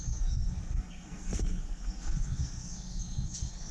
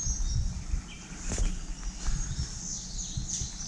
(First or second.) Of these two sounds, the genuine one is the second